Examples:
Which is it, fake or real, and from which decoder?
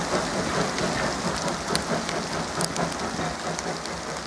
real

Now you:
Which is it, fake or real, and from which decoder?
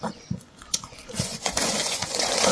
fake, vocoder, Vocos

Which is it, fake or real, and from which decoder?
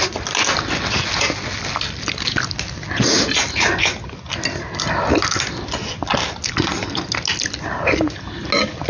real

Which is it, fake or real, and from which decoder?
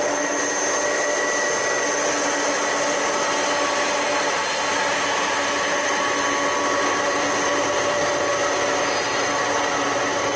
real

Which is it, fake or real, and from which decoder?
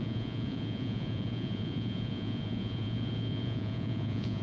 fake, vocoder, Vocos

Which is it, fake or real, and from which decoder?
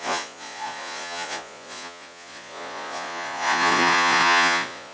fake, vocoder, Vocos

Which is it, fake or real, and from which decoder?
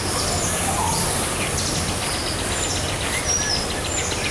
real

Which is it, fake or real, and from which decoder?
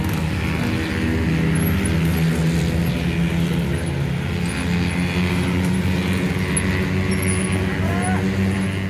real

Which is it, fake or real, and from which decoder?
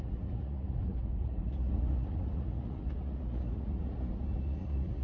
fake, vocoder, Vocos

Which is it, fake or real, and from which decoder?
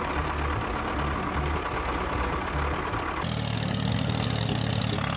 real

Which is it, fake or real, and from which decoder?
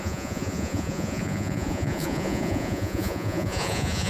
fake, vocoder, Vocos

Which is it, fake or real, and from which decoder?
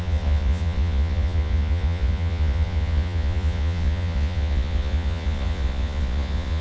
fake, vocoder, Vocos